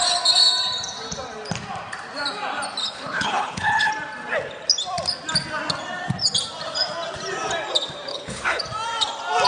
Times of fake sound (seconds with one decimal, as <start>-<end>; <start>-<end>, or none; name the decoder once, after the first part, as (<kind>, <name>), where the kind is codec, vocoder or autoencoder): 2.8-3.9 (codec, HILCodec); 8.1-8.6